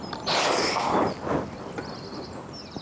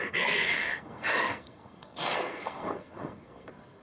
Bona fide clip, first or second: first